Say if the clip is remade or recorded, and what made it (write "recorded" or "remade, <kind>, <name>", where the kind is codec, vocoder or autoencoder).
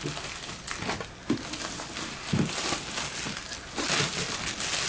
recorded